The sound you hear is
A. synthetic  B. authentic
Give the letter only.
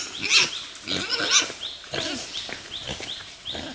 B